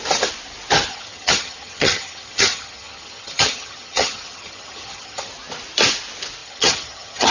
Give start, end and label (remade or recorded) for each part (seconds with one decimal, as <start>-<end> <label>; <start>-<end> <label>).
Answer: 0.0-0.9 recorded; 0.9-5.3 remade; 5.3-6.4 recorded; 6.4-7.3 remade

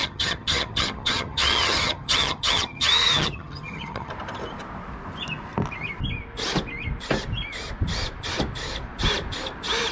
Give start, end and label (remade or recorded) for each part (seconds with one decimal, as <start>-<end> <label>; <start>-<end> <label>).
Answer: 0.0-4.1 remade; 4.1-9.9 recorded

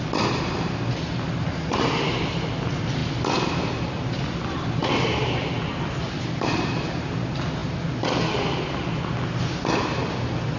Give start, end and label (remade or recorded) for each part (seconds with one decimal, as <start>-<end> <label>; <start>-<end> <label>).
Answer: 0.0-10.6 recorded

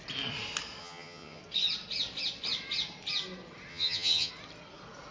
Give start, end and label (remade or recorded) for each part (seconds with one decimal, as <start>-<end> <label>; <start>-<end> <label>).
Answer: 0.0-0.8 recorded; 0.8-1.4 remade; 1.4-3.7 recorded; 3.7-4.3 remade; 4.3-5.1 recorded

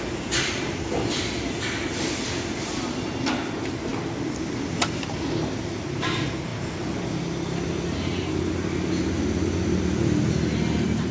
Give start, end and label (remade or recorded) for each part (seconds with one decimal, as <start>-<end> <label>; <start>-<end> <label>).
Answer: 0.0-11.1 recorded

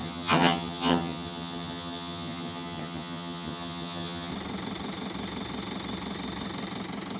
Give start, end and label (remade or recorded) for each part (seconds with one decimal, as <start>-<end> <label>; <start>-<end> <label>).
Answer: 0.0-4.3 remade; 4.3-7.2 recorded

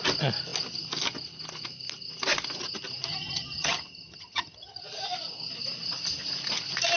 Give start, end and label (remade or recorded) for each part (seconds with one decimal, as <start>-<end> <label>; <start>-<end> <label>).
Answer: 0.0-3.1 recorded; 3.1-4.8 remade; 4.8-7.0 recorded